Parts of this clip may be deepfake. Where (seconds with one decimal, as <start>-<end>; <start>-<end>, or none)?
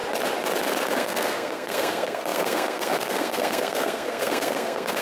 0.9-5.0